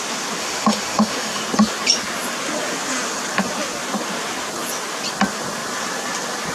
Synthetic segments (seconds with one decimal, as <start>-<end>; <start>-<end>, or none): 0.4-1.4